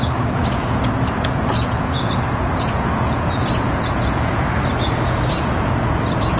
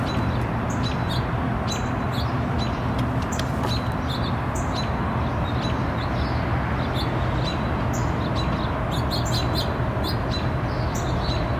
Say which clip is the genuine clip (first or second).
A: second